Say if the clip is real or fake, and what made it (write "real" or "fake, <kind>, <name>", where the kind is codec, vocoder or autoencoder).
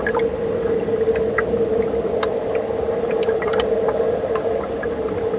real